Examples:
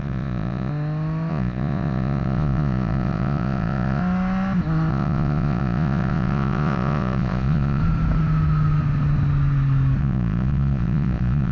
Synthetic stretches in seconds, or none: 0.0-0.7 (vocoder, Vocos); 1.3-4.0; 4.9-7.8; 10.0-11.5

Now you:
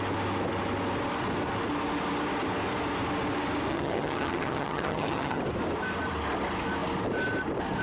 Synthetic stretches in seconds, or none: 3.7-5.4 (vocoder, HiFi-GAN)

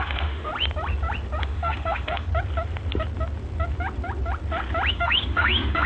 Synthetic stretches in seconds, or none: 0.0-0.5 (autoencoder, DAC-VAE); 1.4-2.3; 4.9-5.9